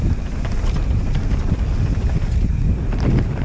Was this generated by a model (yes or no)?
no